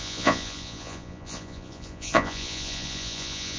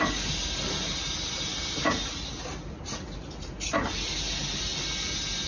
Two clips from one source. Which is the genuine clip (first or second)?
second